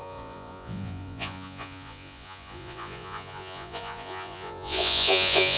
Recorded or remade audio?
remade